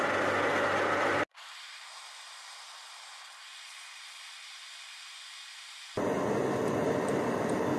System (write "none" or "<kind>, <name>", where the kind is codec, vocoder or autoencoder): none